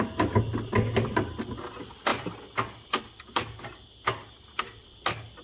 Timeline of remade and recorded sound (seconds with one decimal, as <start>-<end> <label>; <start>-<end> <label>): 0.0-5.4 recorded